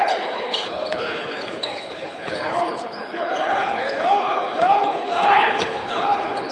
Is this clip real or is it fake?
fake